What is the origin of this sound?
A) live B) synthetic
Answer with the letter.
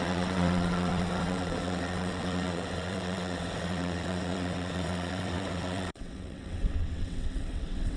B